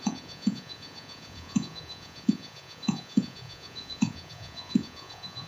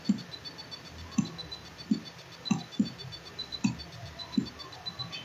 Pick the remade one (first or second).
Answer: first